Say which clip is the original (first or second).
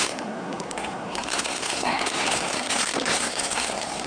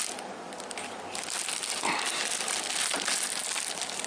second